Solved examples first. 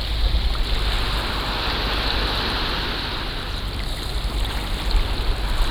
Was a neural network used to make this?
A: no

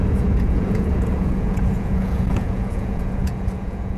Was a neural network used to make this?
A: yes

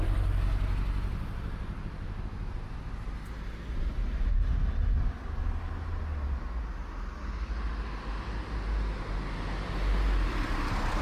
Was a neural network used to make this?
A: no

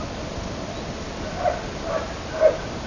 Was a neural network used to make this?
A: no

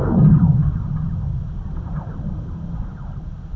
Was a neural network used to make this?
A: yes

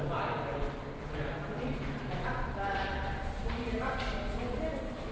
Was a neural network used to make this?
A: no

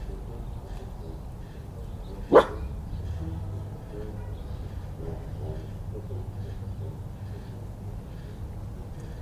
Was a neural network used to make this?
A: no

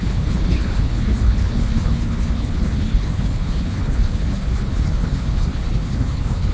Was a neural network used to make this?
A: yes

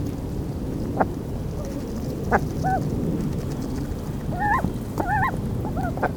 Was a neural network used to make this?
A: no